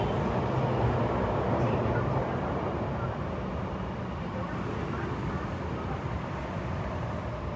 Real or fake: real